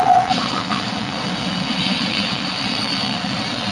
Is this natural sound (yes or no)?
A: no